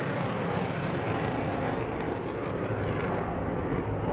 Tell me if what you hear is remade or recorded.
recorded